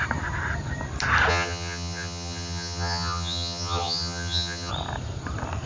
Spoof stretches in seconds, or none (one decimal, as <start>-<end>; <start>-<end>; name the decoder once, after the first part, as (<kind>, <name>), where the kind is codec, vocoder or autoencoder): 1.3-4.7 (vocoder, HiFi-GAN)